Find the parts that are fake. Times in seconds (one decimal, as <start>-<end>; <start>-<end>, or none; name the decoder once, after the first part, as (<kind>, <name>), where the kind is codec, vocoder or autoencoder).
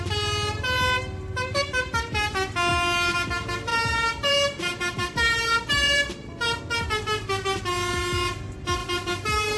3.7-6.6 (vocoder, BigVGAN v2)